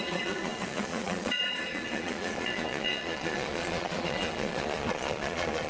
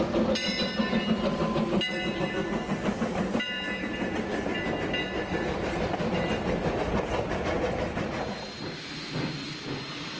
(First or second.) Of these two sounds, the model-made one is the first